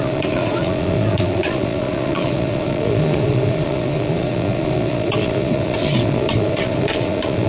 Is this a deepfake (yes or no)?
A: yes